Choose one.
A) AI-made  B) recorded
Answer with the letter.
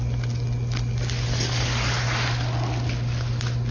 B